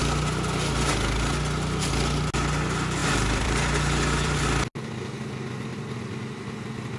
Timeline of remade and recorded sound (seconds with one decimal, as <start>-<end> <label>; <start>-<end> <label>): 0.0-3.0 recorded; 3.0-4.4 remade; 4.4-5.7 recorded; 5.7-7.0 remade